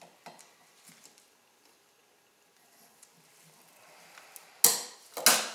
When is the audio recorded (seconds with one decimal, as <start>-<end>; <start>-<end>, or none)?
0.0-5.5